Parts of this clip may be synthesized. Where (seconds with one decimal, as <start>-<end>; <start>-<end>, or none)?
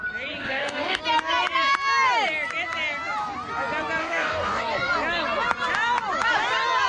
0.4-1.0; 4.0-4.6